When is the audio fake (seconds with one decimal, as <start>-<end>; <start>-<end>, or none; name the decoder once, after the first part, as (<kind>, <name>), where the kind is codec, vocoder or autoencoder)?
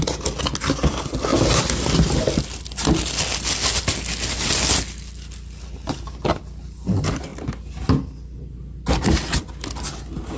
none